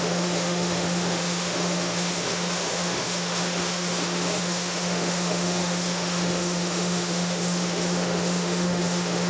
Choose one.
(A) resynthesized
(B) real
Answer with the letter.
A